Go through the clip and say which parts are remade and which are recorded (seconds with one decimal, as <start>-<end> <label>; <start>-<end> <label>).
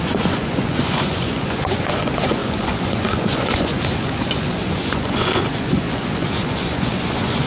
0.0-7.5 remade